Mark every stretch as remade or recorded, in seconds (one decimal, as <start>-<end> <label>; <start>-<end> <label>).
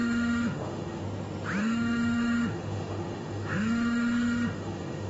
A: 0.0-1.0 remade; 1.0-1.6 recorded; 1.6-5.1 remade